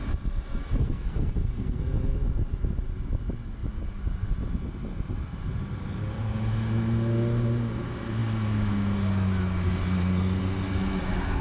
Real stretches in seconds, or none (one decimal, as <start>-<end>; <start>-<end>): 0.0-0.6; 1.8-11.4